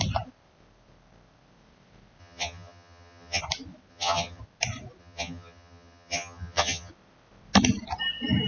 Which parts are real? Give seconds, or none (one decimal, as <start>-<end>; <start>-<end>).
0.0-2.2; 3.4-3.9; 4.4-5.0; 6.9-8.5

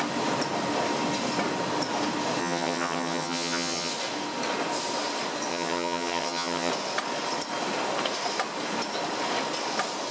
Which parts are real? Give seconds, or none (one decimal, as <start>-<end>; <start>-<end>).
0.0-2.4; 3.9-5.5; 6.7-10.1

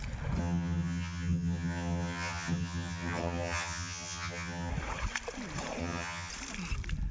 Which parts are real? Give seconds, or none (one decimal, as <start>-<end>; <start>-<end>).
0.0-0.4; 4.7-5.8; 6.3-7.1

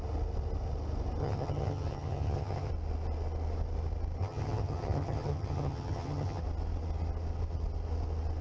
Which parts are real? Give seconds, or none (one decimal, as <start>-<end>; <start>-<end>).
0.0-1.2; 2.7-4.2; 6.4-8.4